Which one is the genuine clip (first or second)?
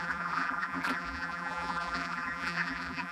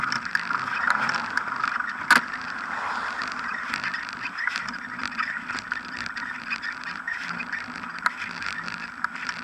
second